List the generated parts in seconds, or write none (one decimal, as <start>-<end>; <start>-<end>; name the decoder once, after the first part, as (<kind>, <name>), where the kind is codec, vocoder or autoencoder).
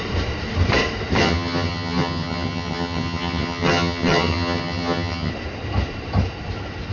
1.2-5.3 (vocoder, HiFi-GAN)